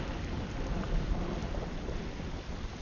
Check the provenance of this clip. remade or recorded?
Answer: recorded